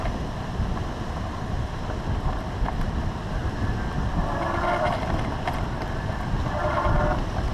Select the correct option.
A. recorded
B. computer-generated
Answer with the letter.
A